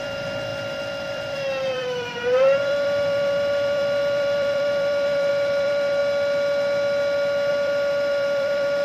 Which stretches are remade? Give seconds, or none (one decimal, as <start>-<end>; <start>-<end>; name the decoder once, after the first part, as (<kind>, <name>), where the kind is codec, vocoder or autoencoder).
0.0-6.0 (vocoder, BigVGAN v2); 7.5-8.8